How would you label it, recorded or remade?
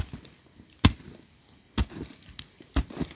recorded